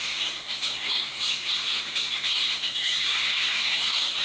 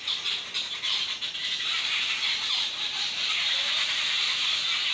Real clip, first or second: second